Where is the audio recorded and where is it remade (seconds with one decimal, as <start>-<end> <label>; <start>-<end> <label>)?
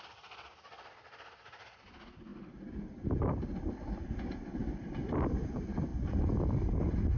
0.0-7.2 recorded